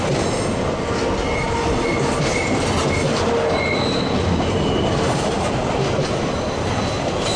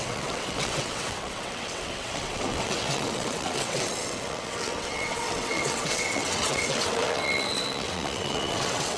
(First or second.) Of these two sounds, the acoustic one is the first